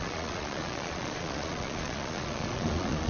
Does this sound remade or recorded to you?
remade